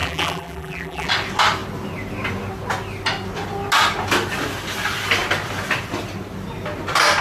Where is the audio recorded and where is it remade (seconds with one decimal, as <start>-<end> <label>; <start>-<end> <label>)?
0.0-1.1 remade; 1.1-7.2 recorded